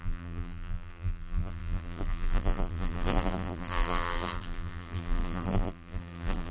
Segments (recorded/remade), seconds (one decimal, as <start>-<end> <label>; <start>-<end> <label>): 0.0-6.5 remade